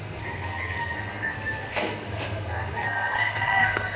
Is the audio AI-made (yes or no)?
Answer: yes